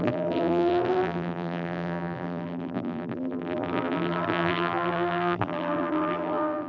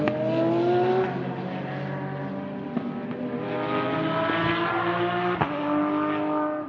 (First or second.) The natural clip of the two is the second